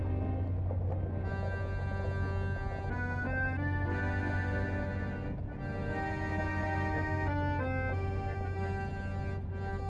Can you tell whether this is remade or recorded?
recorded